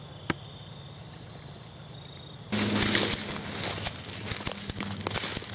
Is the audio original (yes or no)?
yes